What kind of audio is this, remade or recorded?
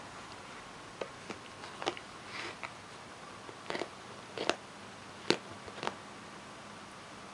recorded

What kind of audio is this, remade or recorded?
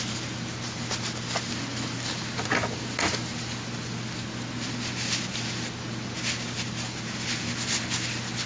recorded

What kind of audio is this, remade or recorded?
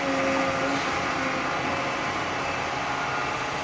recorded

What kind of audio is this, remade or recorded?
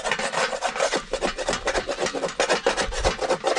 recorded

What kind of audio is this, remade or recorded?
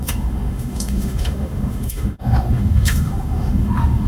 remade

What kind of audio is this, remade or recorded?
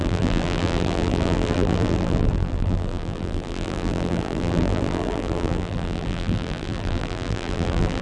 remade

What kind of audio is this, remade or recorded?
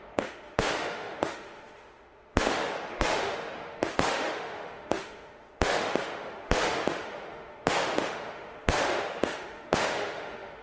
remade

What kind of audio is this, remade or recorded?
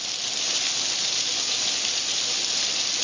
recorded